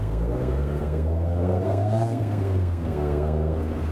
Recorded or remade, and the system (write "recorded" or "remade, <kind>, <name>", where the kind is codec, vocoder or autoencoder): remade, codec, SNAC